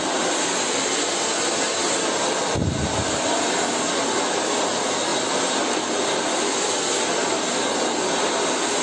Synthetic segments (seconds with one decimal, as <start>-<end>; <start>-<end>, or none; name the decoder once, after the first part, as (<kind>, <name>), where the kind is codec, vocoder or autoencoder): 5.1-6.7 (vocoder, BigVGAN v2)